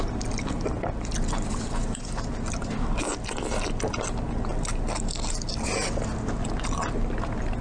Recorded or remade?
recorded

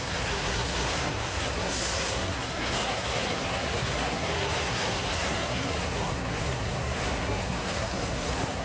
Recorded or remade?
remade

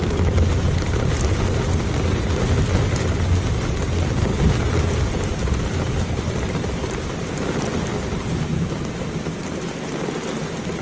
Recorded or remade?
recorded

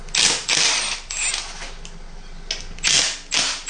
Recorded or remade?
recorded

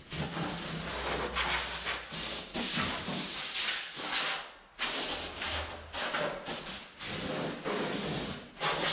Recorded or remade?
recorded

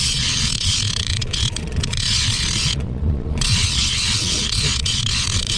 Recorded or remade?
remade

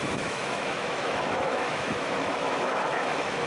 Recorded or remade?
remade